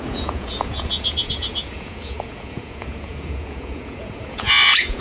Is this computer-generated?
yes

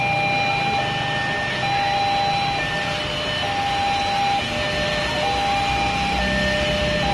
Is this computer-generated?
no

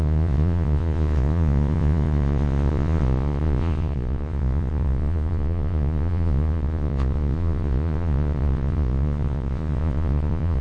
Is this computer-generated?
yes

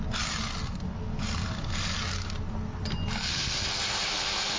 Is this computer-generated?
no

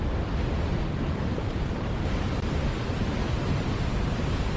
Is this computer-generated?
no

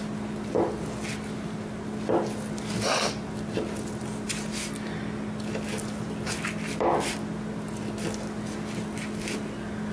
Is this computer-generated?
no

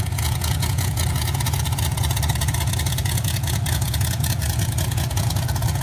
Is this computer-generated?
yes